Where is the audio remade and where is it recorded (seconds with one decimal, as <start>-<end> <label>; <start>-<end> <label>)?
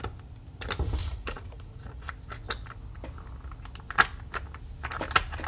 0.0-1.0 recorded; 1.0-2.1 remade; 2.1-5.5 recorded